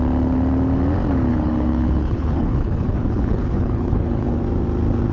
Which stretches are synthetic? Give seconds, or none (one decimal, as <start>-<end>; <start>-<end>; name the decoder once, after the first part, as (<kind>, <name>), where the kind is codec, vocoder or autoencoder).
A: 1.3-4.4 (codec, HILCodec)

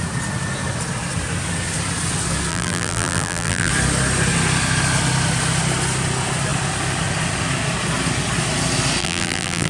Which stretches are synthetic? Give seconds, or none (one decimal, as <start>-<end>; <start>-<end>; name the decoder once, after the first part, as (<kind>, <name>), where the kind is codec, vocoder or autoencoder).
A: 2.5-3.7 (vocoder, BigVGAN v2); 9.0-9.7

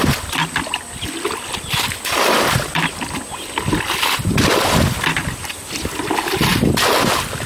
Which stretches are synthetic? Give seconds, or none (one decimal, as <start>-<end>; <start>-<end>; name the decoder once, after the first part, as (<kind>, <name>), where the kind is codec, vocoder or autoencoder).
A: none

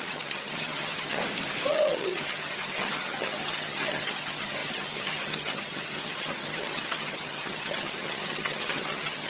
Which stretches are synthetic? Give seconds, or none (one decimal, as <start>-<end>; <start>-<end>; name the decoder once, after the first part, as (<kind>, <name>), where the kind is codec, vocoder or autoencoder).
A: 0.0-1.2 (vocoder, HiFi-GAN); 1.7-9.3

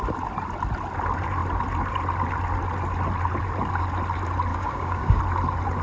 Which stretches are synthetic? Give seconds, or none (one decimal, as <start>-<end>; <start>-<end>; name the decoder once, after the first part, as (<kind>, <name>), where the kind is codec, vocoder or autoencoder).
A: 4.5-5.2 (codec, DAC)

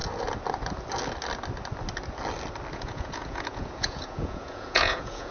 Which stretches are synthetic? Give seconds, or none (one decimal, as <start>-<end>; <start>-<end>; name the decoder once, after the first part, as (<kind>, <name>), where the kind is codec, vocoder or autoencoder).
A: 2.7-5.3 (vocoder, Vocos)